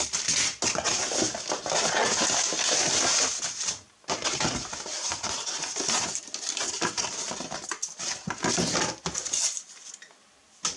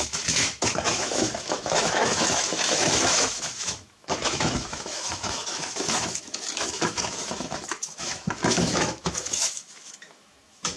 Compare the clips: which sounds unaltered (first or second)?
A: first